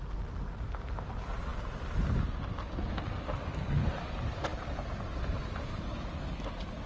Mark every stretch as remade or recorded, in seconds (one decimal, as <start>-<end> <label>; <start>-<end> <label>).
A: 0.0-6.9 recorded

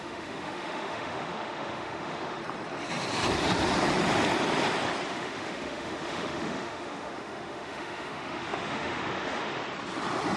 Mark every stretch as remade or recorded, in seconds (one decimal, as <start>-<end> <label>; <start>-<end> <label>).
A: 0.0-2.4 remade; 2.4-5.1 recorded; 5.1-9.6 remade; 9.6-10.4 recorded